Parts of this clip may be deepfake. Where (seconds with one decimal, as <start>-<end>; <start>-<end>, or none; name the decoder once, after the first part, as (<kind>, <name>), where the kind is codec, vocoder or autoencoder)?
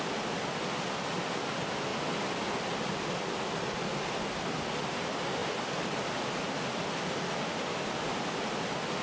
none